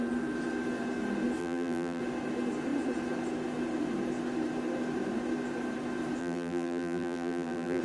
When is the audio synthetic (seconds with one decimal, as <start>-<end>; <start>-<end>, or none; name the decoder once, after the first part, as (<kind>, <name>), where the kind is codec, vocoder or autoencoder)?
1.4-2.0 (vocoder, BigVGAN v2); 6.2-7.8